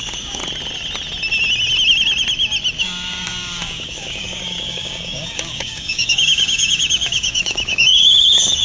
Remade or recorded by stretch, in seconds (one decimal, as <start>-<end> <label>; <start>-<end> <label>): 0.0-0.4 remade; 0.4-2.8 recorded; 2.8-8.6 remade